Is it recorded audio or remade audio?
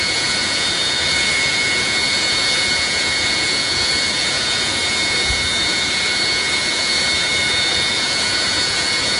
remade